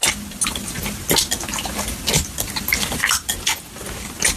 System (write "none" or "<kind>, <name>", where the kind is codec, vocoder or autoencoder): none